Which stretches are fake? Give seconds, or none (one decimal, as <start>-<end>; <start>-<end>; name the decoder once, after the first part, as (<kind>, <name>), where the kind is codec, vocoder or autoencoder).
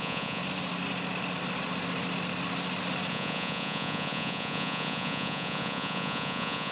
0.0-0.4 (vocoder, Vocos); 3.1-6.7